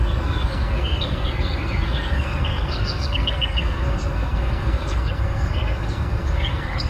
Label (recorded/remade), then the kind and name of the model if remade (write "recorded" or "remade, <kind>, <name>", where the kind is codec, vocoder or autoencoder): remade, codec, SNAC